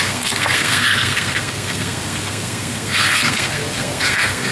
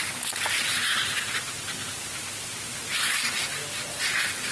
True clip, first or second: second